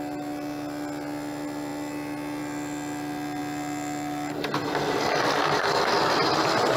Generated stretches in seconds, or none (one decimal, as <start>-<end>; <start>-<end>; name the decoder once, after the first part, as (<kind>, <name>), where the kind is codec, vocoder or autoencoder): none

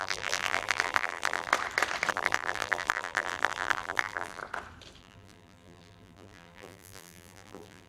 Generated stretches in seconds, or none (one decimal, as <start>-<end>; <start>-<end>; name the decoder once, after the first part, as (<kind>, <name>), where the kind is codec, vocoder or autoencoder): 0.0-1.5 (vocoder, BigVGAN v2); 2.1-4.4; 5.0-7.9

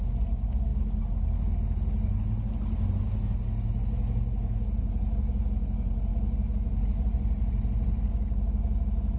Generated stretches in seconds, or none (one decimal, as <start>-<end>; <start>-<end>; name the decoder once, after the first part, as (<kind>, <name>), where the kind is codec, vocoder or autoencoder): none

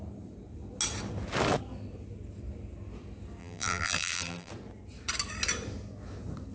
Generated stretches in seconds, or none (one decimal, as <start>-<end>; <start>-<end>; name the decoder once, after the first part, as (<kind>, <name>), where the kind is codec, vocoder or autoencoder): 3.4-4.5 (vocoder, BigVGAN v2)

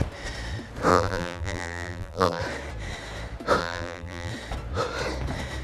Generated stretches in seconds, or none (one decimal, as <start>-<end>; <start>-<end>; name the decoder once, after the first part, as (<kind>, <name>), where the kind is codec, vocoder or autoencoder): 0.9-2.4 (vocoder, BigVGAN v2); 3.6-4.3

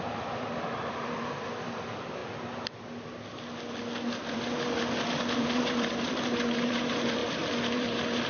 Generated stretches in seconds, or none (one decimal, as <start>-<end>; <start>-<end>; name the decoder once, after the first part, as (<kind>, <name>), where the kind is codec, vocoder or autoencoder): 0.0-2.2 (vocoder, BigVGAN v2); 4.3-8.3

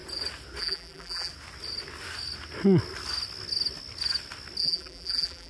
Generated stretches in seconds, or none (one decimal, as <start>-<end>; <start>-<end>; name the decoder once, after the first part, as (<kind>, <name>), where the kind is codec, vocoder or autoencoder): 0.6-1.3 (vocoder, BigVGAN v2); 4.6-5.5

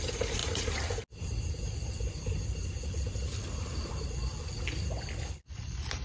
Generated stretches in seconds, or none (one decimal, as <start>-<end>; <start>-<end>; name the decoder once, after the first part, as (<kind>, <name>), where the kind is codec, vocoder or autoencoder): none